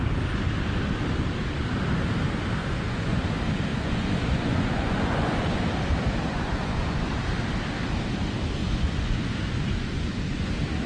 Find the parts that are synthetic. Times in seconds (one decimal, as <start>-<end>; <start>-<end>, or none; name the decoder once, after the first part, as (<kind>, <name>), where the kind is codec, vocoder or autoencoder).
2.6-3.2 (vocoder, Vocos); 3.7-5.6; 6.3-7.1; 8.6-10.5